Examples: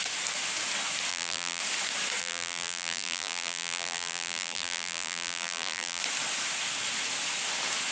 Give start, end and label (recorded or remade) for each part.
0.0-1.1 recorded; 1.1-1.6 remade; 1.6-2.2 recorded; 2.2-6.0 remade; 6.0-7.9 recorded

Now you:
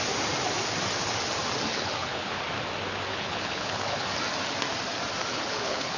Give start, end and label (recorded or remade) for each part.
0.0-1.7 recorded; 1.7-2.4 remade; 2.4-3.1 recorded; 3.1-4.1 remade; 4.1-5.3 recorded; 5.3-6.0 remade

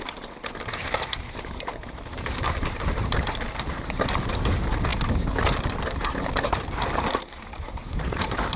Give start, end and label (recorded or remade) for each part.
0.0-4.9 remade; 4.9-5.7 recorded; 5.7-8.6 remade

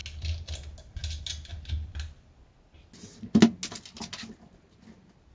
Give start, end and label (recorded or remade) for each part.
0.0-5.3 recorded

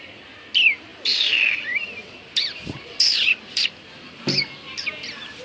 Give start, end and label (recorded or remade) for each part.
0.0-0.9 recorded; 0.9-3.7 remade; 3.7-5.4 recorded